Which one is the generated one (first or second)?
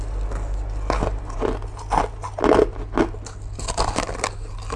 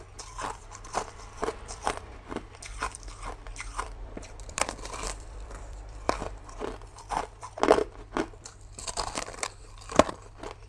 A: second